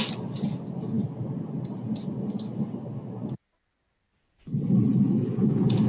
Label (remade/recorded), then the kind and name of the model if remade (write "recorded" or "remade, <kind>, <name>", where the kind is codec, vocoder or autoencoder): recorded